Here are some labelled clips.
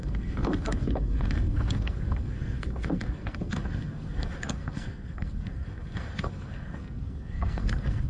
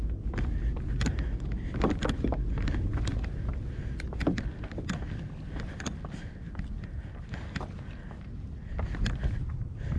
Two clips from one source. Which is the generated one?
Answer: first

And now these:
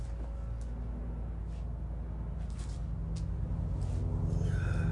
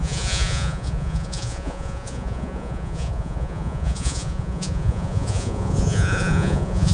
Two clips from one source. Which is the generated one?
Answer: second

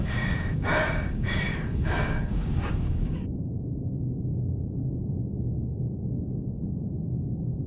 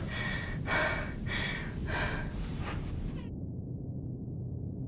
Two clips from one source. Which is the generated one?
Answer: first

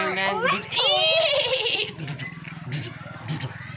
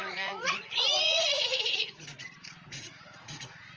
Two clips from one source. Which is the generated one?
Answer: second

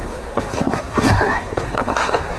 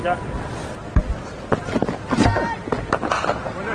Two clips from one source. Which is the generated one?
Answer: first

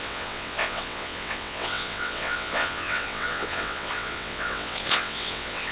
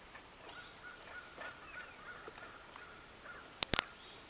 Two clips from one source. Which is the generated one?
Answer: first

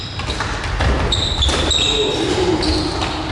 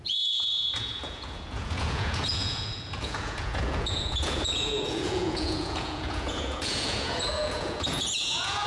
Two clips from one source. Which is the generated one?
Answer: second